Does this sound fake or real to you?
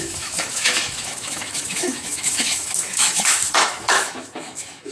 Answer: fake